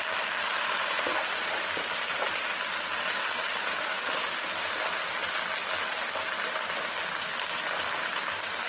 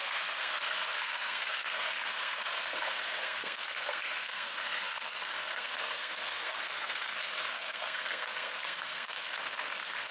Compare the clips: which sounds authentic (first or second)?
first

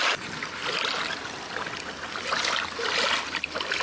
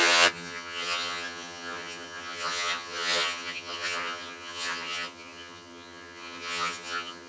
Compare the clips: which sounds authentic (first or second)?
first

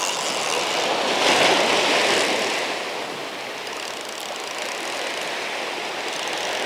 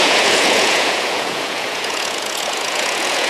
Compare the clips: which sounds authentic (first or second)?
first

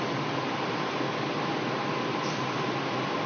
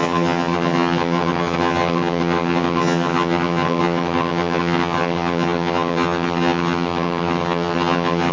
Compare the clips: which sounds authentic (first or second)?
first